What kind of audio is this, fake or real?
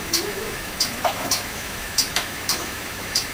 fake